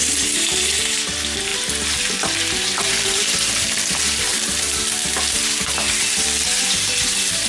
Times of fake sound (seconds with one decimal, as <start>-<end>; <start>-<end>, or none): 0.0-7.5